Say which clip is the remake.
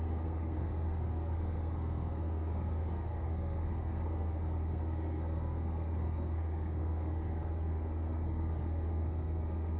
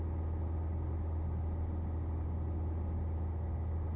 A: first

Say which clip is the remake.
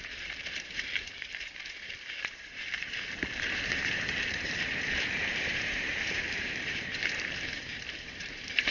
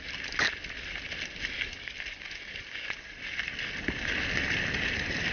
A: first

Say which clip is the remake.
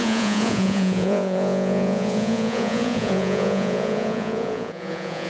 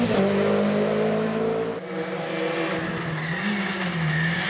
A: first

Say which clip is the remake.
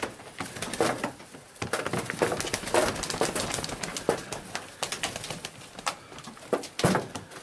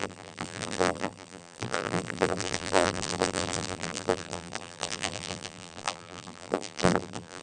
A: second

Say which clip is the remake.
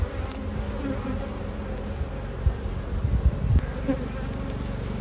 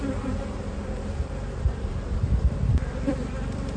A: second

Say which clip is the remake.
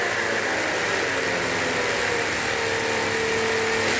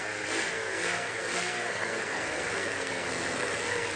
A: second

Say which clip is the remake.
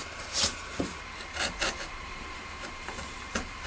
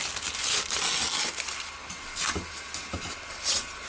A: first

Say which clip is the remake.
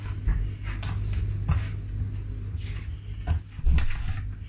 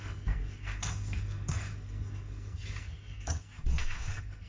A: second